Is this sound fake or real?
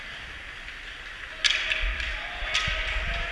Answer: real